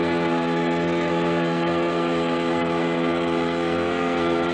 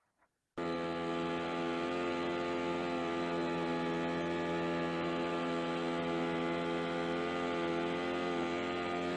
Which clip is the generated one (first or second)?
first